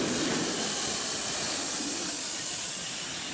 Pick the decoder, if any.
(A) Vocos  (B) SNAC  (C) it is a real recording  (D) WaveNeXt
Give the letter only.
C